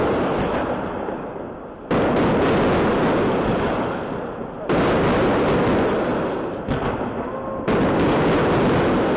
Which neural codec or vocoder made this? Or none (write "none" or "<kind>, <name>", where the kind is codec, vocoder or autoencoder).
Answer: none